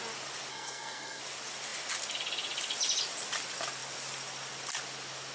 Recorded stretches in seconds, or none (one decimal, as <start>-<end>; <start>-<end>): 0.0-0.5; 1.2-5.3